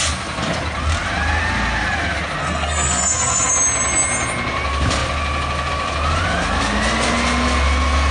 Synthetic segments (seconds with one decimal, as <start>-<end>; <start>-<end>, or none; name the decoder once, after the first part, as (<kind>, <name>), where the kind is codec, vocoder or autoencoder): 2.4-3.5 (codec, SNAC)